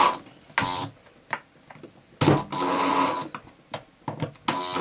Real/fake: real